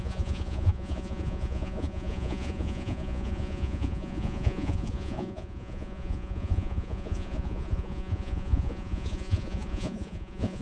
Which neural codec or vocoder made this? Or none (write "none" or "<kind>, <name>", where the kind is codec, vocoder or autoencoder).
vocoder, Vocos